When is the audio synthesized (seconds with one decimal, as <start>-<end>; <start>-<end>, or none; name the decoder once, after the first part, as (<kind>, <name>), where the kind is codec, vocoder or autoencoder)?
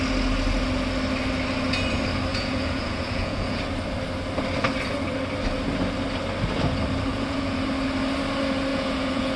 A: 2.3-3.6 (vocoder, Vocos); 7.1-7.6; 8.7-9.4